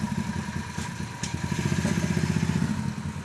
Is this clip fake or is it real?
real